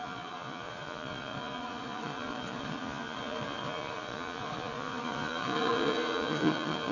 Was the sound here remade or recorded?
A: remade